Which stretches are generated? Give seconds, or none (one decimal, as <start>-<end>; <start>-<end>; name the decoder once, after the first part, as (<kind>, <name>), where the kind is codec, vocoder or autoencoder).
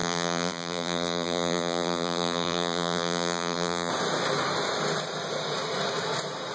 0.0-3.9 (vocoder, BigVGAN v2)